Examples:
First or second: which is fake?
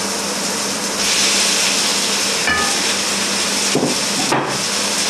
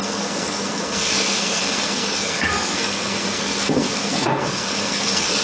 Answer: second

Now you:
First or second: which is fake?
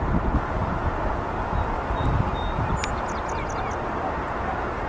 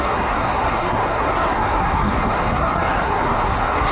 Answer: second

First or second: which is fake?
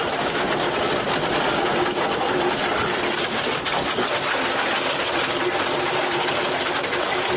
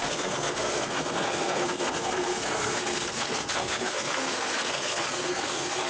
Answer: second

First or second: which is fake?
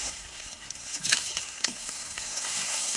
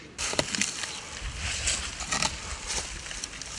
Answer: first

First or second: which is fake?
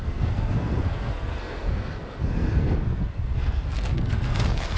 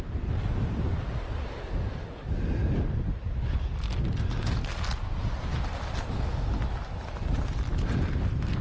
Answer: first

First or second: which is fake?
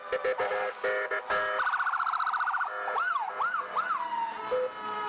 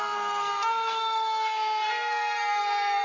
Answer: second